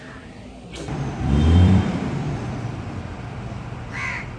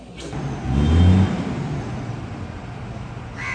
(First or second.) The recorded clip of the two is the second